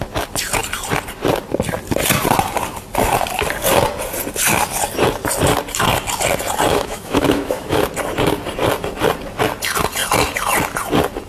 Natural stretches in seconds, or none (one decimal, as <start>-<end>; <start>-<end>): 0.0-6.7; 7.8-11.3